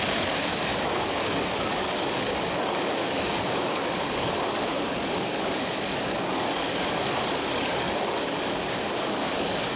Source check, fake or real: fake